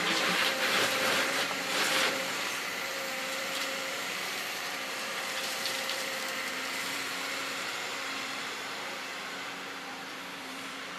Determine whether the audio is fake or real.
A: fake